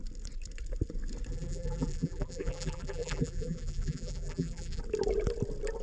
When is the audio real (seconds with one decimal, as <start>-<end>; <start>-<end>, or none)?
0.0-1.3; 4.8-5.8

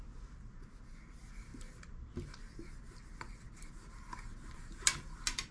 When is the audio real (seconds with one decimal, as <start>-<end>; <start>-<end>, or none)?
0.0-5.5

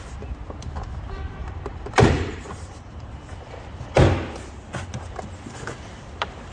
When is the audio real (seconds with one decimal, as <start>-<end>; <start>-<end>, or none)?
0.0-1.4; 3.2-6.5

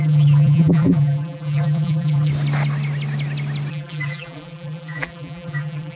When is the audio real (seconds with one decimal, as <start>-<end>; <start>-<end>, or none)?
2.3-3.7

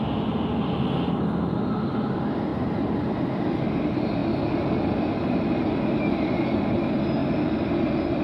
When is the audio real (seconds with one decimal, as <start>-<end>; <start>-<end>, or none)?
0.0-2.5; 3.1-8.2